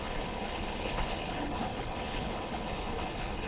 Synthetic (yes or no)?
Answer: yes